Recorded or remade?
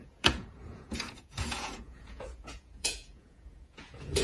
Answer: remade